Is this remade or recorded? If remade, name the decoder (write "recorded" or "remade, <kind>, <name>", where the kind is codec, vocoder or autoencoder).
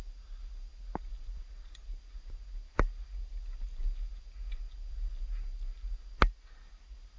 recorded